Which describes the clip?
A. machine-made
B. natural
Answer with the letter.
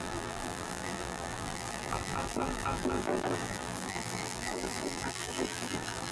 A